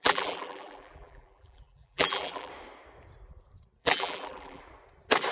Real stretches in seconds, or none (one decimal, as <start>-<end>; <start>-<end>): 2.5-3.8; 4.6-5.3